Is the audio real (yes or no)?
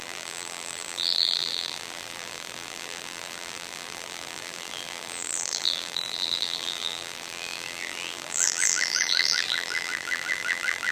no